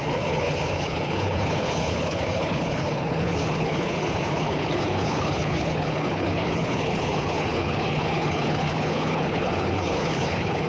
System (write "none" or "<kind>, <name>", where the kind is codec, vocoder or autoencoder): codec, HILCodec